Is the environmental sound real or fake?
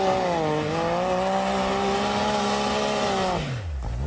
real